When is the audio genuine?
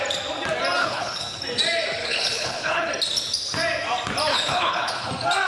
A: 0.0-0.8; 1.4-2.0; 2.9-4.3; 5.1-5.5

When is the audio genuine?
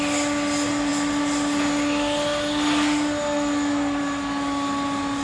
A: 0.0-5.2